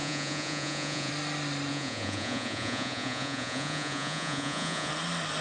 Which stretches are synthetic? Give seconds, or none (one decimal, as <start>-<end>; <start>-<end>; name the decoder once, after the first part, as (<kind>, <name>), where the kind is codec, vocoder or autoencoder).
0.0-1.1 (vocoder, Vocos); 1.7-4.9